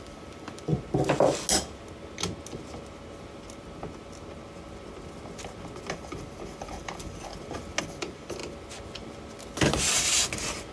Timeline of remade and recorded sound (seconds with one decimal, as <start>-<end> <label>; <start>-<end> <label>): 0.0-0.7 remade; 0.7-5.9 recorded; 5.9-7.3 remade; 7.3-7.8 recorded; 7.8-8.4 remade; 8.4-10.7 recorded